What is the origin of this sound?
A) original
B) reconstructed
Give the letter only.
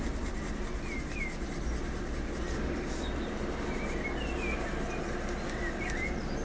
A